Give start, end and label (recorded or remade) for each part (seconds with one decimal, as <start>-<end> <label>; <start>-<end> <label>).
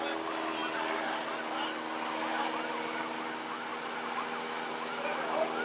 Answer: 0.0-5.6 recorded